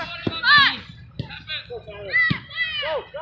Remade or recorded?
recorded